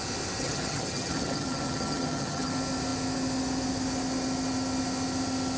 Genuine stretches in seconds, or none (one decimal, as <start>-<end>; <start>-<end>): 0.0-0.4; 2.5-5.6